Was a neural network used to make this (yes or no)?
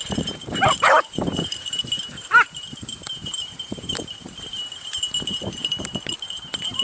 yes